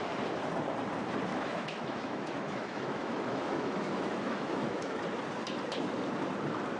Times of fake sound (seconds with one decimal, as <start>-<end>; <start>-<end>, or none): 1.3-5.0